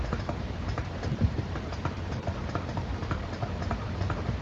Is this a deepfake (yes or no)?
yes